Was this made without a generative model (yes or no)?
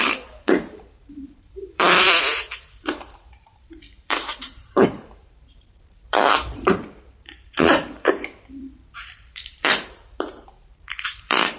no